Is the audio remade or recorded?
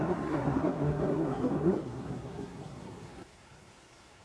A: remade